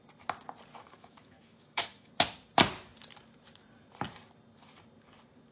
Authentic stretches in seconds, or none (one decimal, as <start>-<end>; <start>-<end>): 0.0-0.7; 2.1-5.5